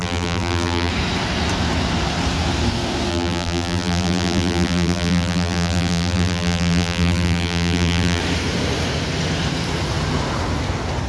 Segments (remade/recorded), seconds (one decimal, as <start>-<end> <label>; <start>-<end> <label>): 0.0-0.9 remade; 0.9-3.1 recorded; 3.1-8.2 remade; 8.2-11.1 recorded